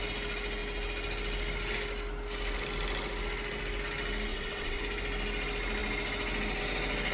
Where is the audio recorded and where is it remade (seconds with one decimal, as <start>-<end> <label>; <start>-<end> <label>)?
0.0-4.3 recorded; 4.3-4.8 remade; 4.8-7.1 recorded